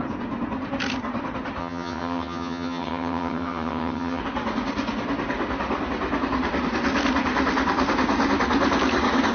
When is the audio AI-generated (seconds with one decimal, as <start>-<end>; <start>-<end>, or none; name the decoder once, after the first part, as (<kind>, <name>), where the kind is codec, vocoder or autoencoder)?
1.6-4.2 (vocoder, HiFi-GAN)